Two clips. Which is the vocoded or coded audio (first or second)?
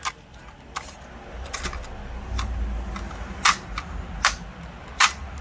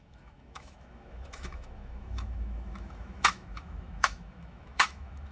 second